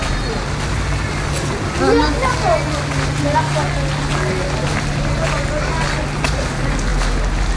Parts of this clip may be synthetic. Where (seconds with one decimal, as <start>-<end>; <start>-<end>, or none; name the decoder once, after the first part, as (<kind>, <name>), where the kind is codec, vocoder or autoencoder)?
none